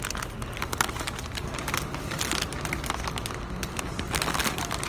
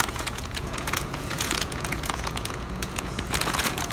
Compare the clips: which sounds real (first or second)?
first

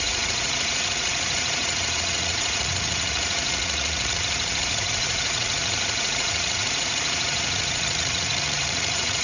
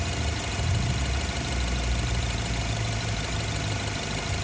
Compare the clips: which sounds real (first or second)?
second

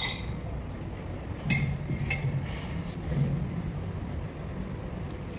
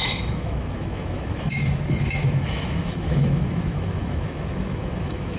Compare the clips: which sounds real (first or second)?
first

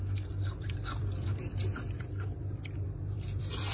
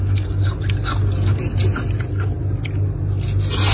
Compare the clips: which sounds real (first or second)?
second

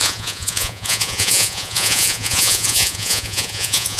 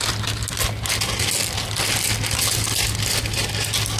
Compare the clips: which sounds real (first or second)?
second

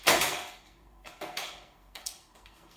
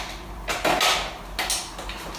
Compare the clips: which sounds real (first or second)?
second